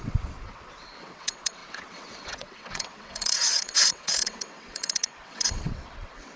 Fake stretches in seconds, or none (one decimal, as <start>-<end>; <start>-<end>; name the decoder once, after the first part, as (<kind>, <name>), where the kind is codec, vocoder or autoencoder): 0.0-6.4 (vocoder, WaveNeXt)